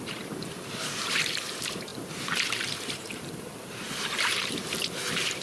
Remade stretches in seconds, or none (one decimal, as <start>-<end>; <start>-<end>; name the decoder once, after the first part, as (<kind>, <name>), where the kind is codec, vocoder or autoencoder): 0.0-5.4 (vocoder, BigVGAN v2)